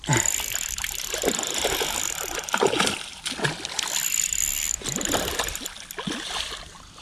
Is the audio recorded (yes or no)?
yes